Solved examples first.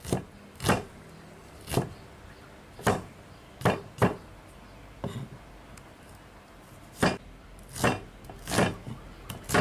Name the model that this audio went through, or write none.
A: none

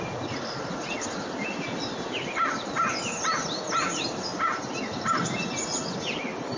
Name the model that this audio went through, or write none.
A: none